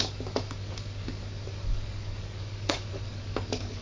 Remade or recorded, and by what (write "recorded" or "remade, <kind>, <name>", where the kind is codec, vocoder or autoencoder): remade, codec, DAC